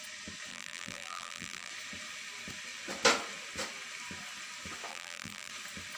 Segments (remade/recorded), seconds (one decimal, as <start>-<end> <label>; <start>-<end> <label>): 0.0-0.5 recorded; 0.5-1.7 remade; 1.7-4.9 recorded; 4.9-5.5 remade; 5.5-6.0 recorded